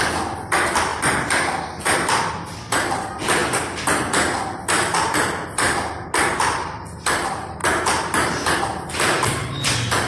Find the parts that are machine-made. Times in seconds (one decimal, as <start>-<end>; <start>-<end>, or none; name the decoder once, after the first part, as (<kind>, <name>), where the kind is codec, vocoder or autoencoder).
7.6-8.6 (vocoder, BigVGAN v2)